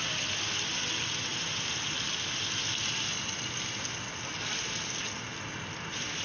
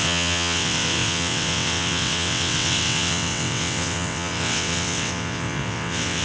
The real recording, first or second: first